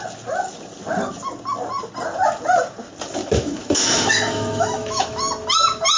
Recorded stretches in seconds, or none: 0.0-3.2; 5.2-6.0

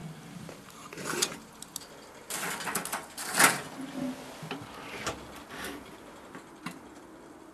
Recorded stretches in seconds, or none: 0.0-7.5

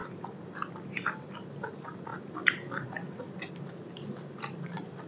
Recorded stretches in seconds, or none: 0.0-5.1